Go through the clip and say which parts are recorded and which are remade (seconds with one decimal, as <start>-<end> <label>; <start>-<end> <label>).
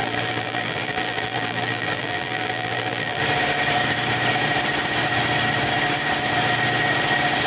0.0-3.2 remade; 3.2-7.5 recorded